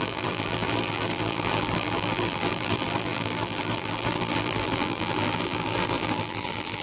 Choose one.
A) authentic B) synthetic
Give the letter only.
B